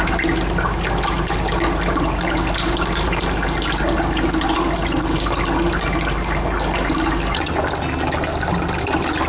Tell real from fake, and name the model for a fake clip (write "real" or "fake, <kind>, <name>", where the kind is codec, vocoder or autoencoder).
real